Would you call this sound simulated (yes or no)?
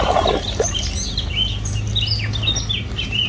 no